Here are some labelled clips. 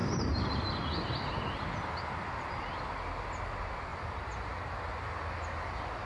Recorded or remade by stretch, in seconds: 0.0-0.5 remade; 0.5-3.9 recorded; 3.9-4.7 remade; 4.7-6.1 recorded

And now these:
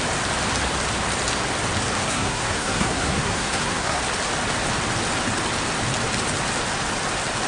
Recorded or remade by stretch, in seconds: 0.0-2.0 recorded; 2.0-4.0 remade; 4.0-7.5 recorded

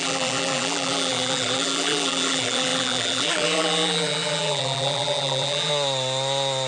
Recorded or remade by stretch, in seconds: 0.0-5.7 remade; 5.7-6.7 recorded

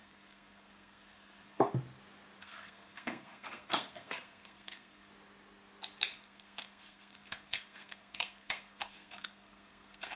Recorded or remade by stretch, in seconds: 0.0-1.7 remade; 1.7-2.4 recorded; 2.4-5.1 remade; 5.1-6.1 recorded; 6.1-10.2 remade

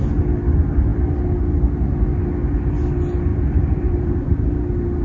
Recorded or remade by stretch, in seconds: 0.0-3.3 recorded; 3.3-4.4 remade; 4.4-5.0 recorded

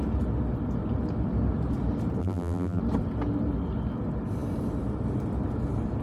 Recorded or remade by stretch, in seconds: 0.0-2.2 recorded; 2.2-2.8 remade; 2.8-6.0 recorded

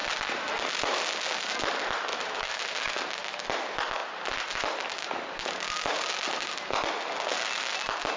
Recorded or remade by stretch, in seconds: 0.0-2.1 recorded; 2.1-2.6 remade; 2.6-8.2 recorded

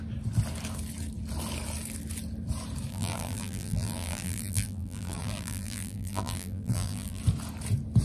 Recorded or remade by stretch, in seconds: 0.0-2.9 recorded; 2.9-7.2 remade; 7.2-8.0 recorded